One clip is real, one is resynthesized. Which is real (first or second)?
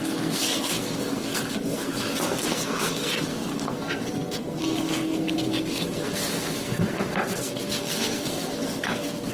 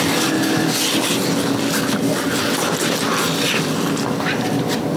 second